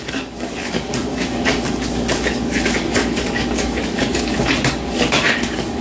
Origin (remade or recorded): remade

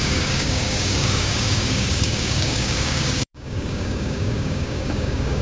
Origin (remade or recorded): remade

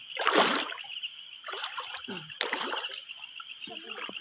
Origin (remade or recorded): recorded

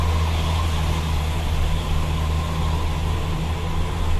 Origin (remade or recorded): recorded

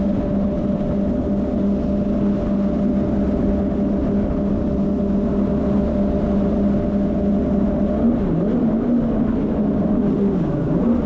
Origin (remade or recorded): recorded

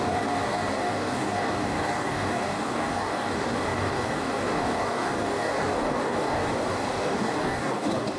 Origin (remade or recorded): remade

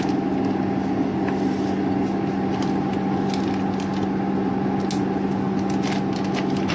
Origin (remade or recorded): recorded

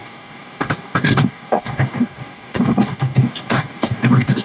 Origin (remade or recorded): remade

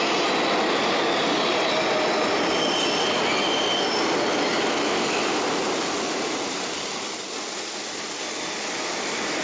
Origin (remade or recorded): recorded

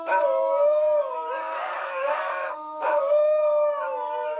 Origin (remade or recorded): remade